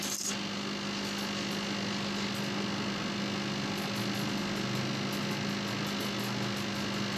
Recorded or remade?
recorded